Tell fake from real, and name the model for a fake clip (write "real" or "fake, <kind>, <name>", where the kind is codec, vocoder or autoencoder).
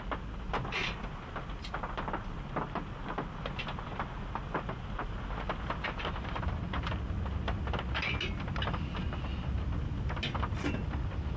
real